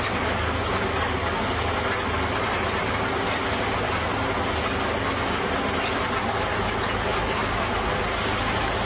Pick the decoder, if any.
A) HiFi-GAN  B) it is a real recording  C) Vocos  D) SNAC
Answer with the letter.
B